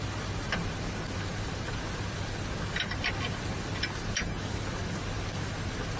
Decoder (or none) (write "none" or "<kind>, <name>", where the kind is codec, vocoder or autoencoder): none